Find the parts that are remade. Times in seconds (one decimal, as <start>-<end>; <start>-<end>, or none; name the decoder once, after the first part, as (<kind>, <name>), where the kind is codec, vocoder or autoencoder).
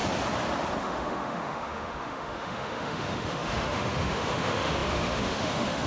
0.8-5.9 (autoencoder, DAC-VAE)